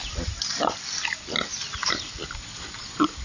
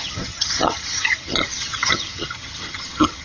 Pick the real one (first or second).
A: first